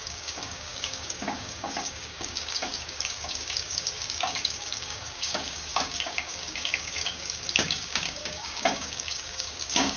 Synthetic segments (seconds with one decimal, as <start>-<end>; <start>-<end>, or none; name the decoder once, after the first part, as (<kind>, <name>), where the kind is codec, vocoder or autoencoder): 0.0-10.0 (codec, DAC)